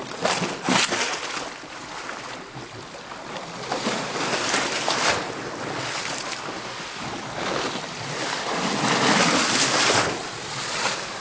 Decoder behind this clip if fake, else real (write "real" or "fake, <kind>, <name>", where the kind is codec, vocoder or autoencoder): real